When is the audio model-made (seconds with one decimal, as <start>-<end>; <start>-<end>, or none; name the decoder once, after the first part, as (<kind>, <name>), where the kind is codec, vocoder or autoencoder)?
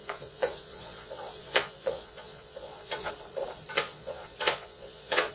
0.0-3.1 (vocoder, Vocos); 3.7-5.3